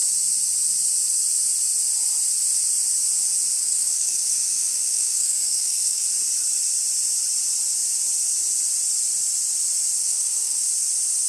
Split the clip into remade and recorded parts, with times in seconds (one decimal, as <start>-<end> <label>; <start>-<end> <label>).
0.0-3.6 recorded; 3.6-6.1 remade; 6.1-10.0 recorded; 10.0-10.6 remade; 10.6-11.3 recorded